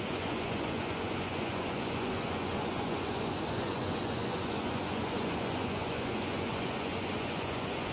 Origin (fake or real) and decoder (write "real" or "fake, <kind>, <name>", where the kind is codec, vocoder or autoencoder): fake, vocoder, Vocos